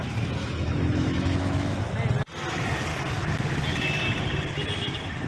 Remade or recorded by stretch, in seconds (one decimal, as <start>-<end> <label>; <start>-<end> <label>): 0.0-0.4 recorded; 0.4-1.9 remade; 1.9-5.3 recorded